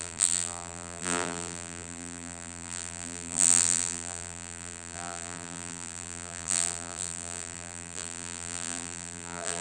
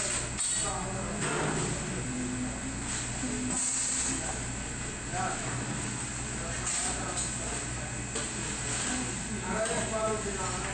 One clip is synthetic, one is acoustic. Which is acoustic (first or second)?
second